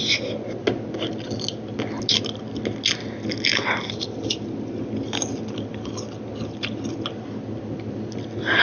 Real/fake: real